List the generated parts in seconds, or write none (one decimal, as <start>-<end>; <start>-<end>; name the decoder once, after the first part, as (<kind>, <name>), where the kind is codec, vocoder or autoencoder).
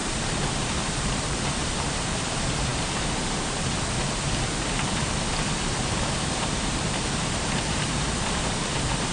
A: 0.0-9.1 (vocoder, BigVGAN v2)